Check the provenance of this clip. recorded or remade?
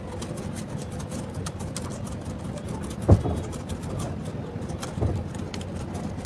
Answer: recorded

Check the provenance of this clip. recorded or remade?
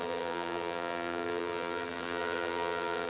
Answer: remade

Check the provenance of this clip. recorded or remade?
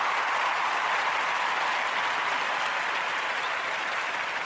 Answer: recorded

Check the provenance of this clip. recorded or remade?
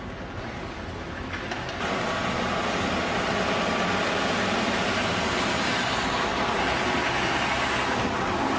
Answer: recorded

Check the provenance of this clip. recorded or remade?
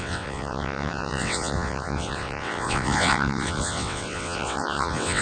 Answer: remade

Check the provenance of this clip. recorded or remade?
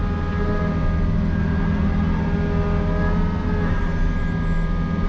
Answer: recorded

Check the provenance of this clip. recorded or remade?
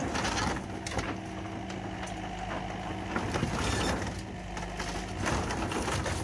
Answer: recorded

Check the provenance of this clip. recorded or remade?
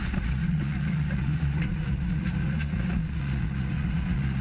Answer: remade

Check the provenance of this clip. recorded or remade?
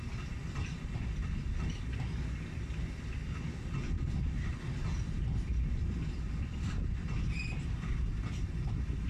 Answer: recorded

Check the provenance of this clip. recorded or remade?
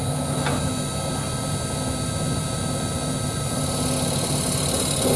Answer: recorded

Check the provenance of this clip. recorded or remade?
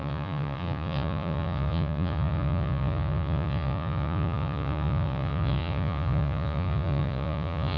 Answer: remade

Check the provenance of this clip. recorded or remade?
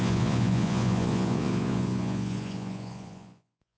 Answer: remade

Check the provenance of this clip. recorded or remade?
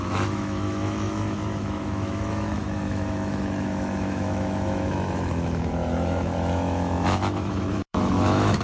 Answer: remade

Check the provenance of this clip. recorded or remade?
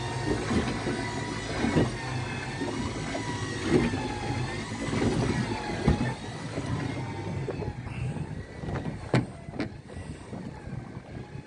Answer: recorded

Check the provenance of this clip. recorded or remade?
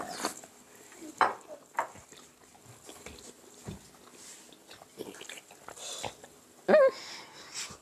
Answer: recorded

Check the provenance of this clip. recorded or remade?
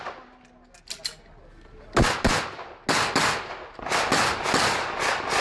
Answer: recorded